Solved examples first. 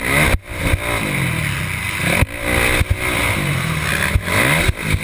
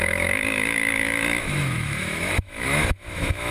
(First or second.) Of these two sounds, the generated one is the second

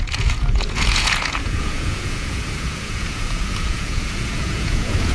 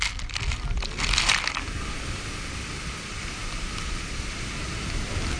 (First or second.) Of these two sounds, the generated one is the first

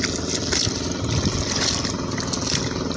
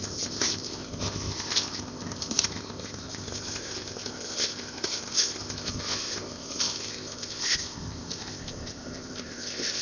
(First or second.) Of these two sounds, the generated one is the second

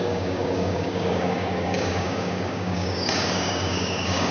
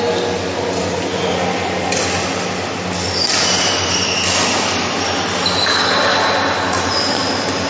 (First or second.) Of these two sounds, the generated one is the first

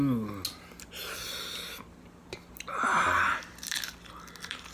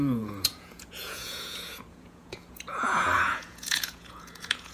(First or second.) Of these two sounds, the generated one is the second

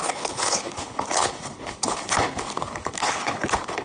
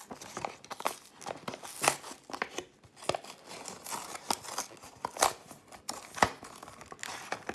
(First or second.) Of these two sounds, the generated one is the first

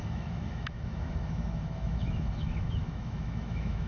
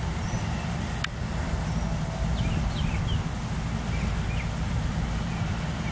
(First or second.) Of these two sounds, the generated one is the first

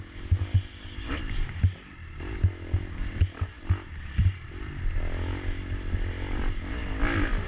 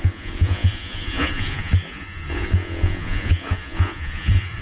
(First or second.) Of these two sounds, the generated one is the second